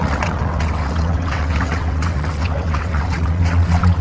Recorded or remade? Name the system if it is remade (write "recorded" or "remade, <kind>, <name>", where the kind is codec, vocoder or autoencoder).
remade, vocoder, WaveNeXt